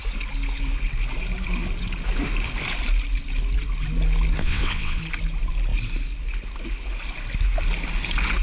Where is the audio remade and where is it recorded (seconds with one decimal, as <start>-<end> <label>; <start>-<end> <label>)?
0.0-4.4 recorded; 4.4-5.0 remade; 5.0-8.4 recorded